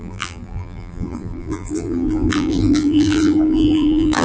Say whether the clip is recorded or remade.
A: remade